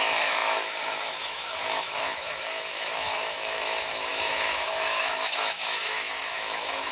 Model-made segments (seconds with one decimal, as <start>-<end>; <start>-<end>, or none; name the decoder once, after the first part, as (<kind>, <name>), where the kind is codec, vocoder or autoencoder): 0.0-6.9 (autoencoder, DAC-VAE)